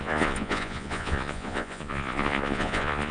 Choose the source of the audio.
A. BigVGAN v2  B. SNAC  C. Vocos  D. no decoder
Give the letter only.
C